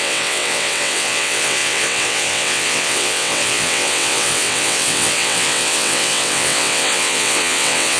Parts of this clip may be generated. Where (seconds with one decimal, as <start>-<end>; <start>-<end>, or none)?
0.0-8.0